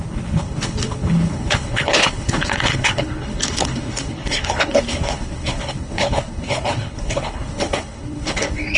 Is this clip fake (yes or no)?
yes